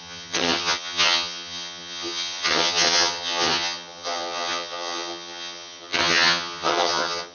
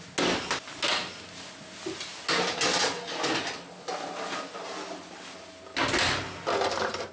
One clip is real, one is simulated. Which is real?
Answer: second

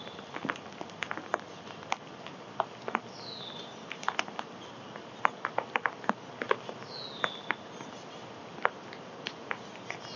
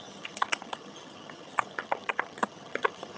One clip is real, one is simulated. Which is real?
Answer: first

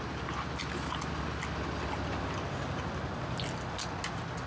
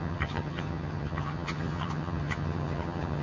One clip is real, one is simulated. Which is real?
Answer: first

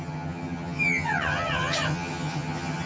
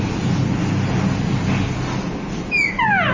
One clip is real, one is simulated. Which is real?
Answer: second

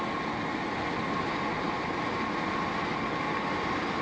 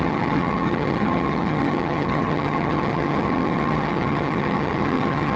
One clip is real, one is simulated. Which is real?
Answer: first